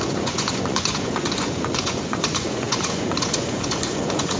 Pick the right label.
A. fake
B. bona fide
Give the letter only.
A